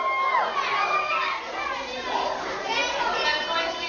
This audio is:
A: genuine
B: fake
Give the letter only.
A